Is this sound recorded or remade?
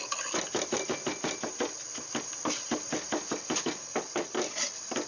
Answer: recorded